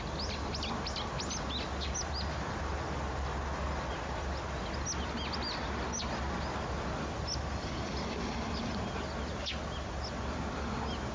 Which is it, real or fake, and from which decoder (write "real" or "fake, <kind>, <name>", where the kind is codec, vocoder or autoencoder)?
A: real